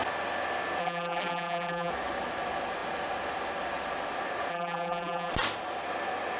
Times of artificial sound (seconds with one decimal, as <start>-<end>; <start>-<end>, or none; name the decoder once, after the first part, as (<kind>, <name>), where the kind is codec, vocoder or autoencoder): 0.8-1.9 (vocoder, BigVGAN v2); 4.5-5.3